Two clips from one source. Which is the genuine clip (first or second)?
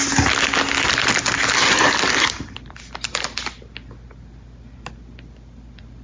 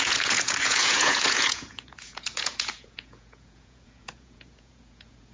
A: first